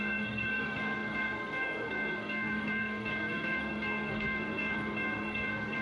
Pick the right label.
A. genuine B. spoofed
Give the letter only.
B